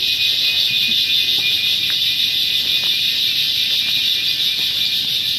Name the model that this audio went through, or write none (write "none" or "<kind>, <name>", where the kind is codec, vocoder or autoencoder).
none